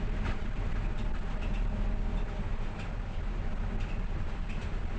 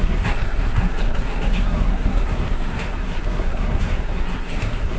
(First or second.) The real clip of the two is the first